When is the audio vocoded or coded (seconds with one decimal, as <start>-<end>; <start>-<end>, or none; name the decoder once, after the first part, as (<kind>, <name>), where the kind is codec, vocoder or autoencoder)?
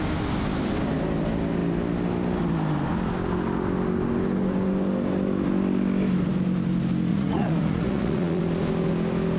7.1-8.4 (vocoder, Vocos)